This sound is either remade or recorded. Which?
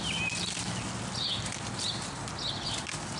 recorded